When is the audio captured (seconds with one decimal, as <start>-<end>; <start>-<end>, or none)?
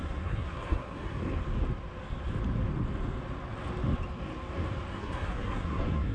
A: 1.2-4.9